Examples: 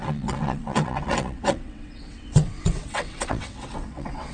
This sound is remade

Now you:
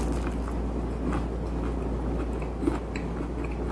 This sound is recorded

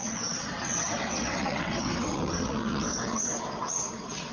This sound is remade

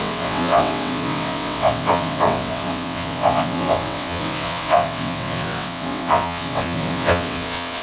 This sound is remade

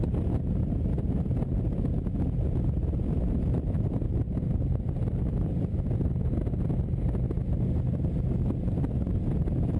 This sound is recorded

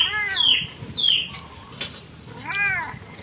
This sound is recorded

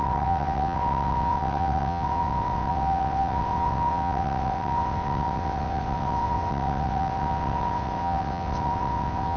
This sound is remade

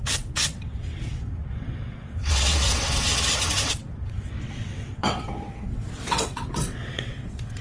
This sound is remade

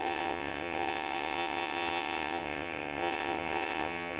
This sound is remade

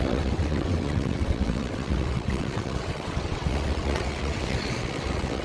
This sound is remade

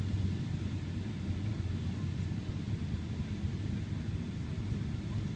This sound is recorded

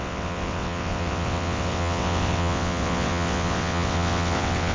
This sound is remade